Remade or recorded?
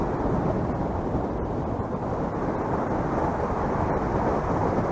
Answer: recorded